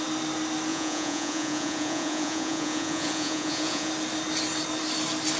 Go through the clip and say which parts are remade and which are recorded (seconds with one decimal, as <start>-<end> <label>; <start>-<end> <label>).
0.0-0.7 recorded; 0.7-3.9 remade; 3.9-5.4 recorded